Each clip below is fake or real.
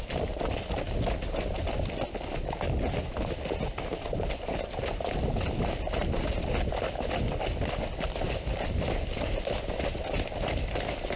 real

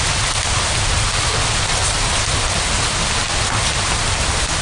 real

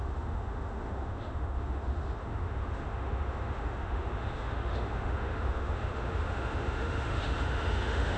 fake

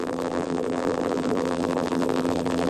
fake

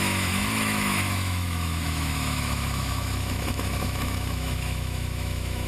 fake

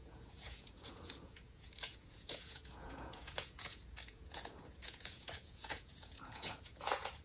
fake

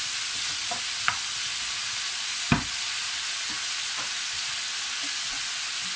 real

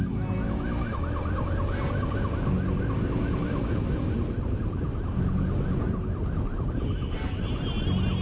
real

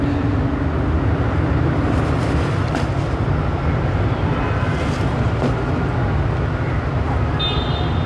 real